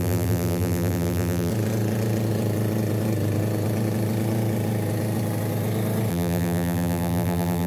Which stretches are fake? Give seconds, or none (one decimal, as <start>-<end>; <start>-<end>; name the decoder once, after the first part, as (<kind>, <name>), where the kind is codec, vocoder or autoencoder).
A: 0.0-1.5 (vocoder, BigVGAN v2); 6.1-7.7